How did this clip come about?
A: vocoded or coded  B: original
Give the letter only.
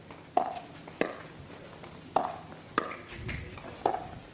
B